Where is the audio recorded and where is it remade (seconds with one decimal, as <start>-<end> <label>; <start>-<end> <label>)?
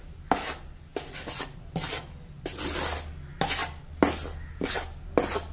0.0-5.5 recorded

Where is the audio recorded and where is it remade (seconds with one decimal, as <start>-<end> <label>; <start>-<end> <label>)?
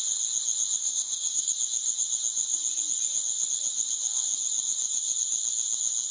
0.0-0.8 recorded; 0.8-1.5 remade; 1.5-6.1 recorded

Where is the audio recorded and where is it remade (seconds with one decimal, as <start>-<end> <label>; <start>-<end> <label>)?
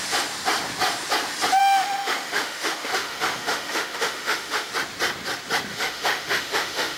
0.0-1.6 recorded; 1.6-4.7 remade; 4.7-5.7 recorded; 5.7-7.0 remade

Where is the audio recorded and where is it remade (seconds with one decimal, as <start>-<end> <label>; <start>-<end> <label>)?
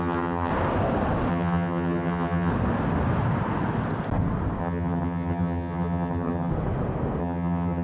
0.0-0.5 remade; 0.5-1.3 recorded; 1.3-2.5 remade; 2.5-4.6 recorded; 4.6-6.5 remade; 6.5-7.2 recorded; 7.2-7.8 remade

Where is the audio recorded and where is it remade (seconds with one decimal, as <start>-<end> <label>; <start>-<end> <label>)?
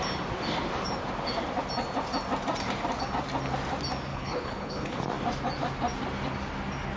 0.0-4.1 recorded; 4.1-5.0 remade; 5.0-7.0 recorded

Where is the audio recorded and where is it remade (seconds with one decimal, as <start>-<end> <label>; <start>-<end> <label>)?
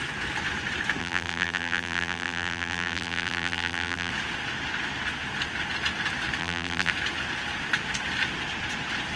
0.0-1.0 recorded; 1.0-4.1 remade; 4.1-6.4 recorded; 6.4-6.9 remade; 6.9-9.2 recorded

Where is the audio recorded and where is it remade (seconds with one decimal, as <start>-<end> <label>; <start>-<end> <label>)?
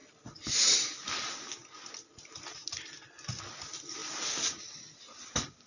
0.0-5.7 recorded